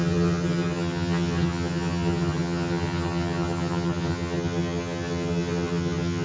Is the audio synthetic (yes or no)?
yes